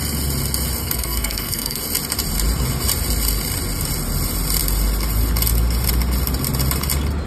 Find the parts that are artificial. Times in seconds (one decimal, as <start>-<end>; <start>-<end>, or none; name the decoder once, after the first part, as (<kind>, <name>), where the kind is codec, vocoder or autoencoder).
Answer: 0.8-1.8 (codec, SNAC)